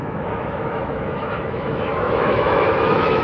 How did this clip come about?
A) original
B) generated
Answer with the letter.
B